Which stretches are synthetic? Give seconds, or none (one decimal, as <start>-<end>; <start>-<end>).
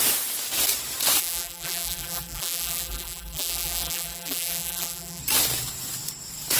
1.2-5.2